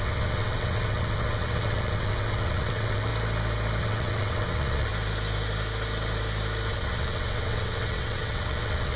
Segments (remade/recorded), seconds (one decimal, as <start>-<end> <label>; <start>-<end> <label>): 0.0-3.1 remade; 3.1-3.8 recorded; 3.8-4.9 remade; 4.9-6.7 recorded; 6.7-9.0 remade

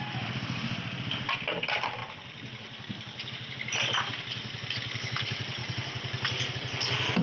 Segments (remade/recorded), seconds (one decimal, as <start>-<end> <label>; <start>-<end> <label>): 0.0-7.2 recorded

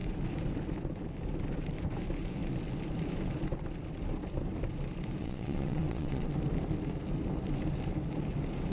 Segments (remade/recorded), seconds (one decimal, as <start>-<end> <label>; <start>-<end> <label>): 0.0-5.2 recorded; 5.2-6.3 remade; 6.3-8.7 recorded

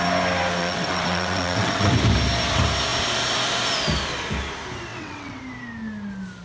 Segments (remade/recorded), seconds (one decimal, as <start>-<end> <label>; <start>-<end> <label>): 0.0-0.6 recorded; 0.6-1.9 remade; 1.9-4.9 recorded; 4.9-5.4 remade; 5.4-6.4 recorded

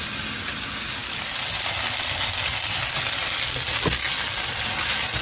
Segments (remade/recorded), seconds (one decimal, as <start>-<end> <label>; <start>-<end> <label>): 0.0-5.2 recorded

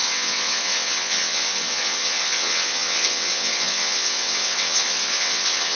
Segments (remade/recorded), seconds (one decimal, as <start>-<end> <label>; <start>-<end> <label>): 0.0-5.7 remade

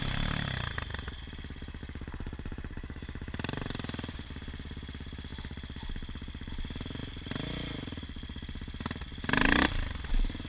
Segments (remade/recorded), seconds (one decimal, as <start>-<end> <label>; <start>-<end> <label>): 0.0-10.5 recorded

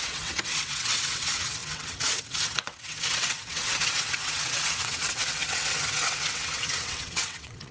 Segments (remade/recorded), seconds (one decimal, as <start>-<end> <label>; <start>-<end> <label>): 0.0-7.7 remade